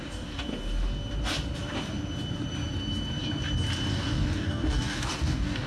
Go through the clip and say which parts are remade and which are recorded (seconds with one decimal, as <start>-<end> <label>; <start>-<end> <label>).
0.0-0.5 remade; 0.5-3.9 recorded; 3.9-5.7 remade

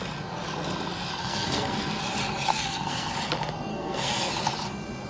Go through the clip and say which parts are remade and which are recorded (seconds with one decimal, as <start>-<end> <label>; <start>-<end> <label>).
0.0-1.2 recorded; 1.2-2.0 remade; 2.0-2.5 recorded; 2.5-3.1 remade; 3.1-3.7 recorded; 3.7-4.3 remade; 4.3-5.1 recorded

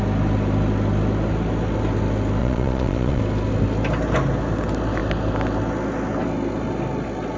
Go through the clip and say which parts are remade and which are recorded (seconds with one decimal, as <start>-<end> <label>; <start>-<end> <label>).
0.0-2.4 recorded; 2.4-3.2 remade; 3.2-7.4 recorded

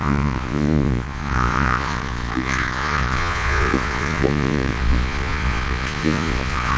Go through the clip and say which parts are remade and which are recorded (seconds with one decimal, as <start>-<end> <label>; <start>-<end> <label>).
0.0-6.8 remade

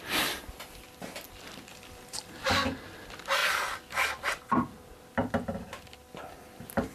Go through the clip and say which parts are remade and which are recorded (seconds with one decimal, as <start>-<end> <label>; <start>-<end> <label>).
0.0-1.7 recorded; 1.7-2.5 remade; 2.5-6.9 recorded

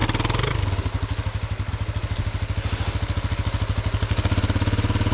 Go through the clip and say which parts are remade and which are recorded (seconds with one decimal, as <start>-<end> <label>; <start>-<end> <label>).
0.0-5.1 recorded

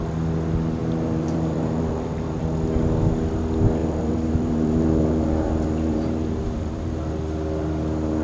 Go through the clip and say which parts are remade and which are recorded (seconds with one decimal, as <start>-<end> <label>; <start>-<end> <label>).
0.0-0.8 recorded; 0.8-2.4 remade; 2.4-3.8 recorded; 3.8-7.1 remade; 7.1-8.2 recorded